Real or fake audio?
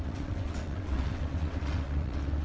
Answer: fake